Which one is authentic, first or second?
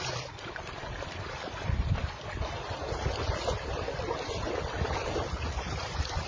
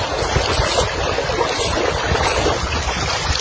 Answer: second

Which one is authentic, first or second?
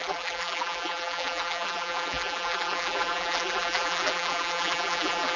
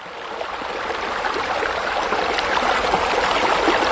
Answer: second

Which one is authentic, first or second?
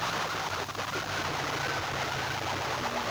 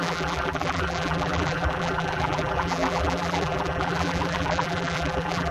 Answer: first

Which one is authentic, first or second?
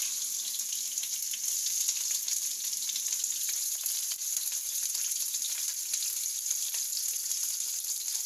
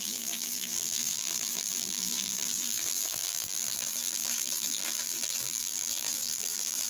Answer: first